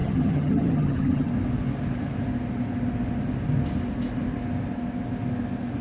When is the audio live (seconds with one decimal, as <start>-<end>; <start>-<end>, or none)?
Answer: 1.3-5.8